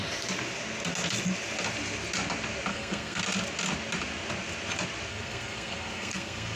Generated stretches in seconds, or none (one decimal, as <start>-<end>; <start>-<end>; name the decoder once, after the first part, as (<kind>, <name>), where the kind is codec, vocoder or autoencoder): 2.7-3.2 (codec, SNAC); 5.1-6.6